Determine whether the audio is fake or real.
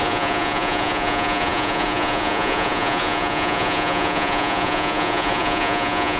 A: fake